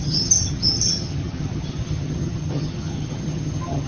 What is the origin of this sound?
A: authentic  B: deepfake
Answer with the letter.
B